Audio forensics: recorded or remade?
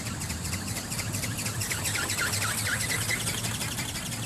remade